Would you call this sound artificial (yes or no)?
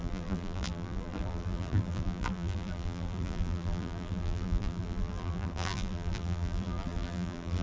yes